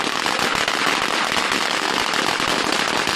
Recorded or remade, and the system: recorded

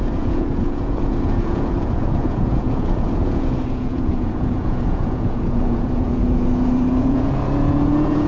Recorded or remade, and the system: remade, vocoder, Vocos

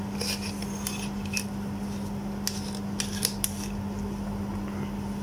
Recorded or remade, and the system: recorded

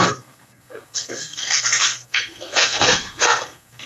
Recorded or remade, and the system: remade, codec, SNAC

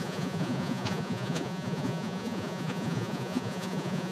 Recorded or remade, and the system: remade, vocoder, Vocos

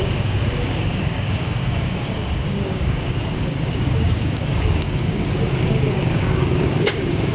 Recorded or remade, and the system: remade, codec, DAC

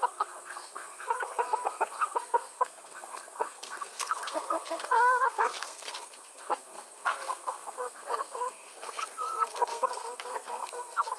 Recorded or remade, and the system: remade, codec, SNAC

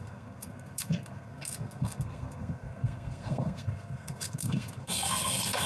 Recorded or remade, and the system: remade, codec, SNAC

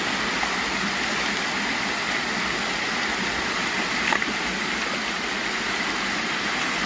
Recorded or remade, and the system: recorded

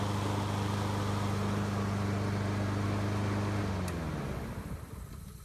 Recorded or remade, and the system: recorded